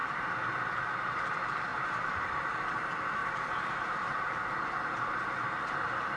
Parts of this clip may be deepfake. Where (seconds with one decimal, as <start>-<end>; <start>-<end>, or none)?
0.0-0.5; 1.7-2.3; 3.2-5.2